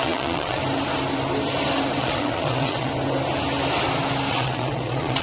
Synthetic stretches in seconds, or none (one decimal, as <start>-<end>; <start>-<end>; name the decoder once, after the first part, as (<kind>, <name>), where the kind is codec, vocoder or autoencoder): 0.0-0.6 (vocoder, Vocos); 2.0-2.9; 4.3-5.2